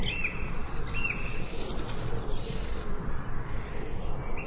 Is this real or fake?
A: real